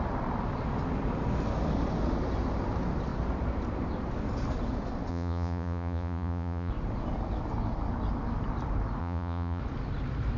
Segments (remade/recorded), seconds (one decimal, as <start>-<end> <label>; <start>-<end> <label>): 0.0-5.1 recorded; 5.1-6.7 remade; 6.7-9.0 recorded; 9.0-9.6 remade; 9.6-10.4 recorded